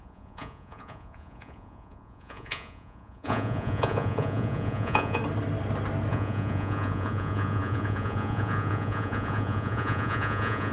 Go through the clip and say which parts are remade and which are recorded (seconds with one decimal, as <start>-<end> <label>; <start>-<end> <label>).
0.0-5.2 remade; 5.2-6.1 recorded; 6.1-10.7 remade